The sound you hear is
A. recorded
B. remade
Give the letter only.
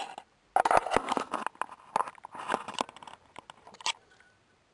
A